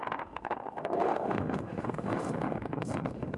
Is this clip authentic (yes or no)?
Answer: no